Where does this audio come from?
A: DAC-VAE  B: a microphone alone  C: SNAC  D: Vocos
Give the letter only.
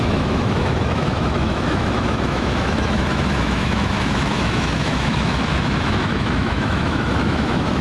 A